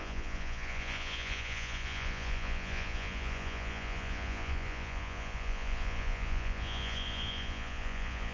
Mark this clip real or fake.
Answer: fake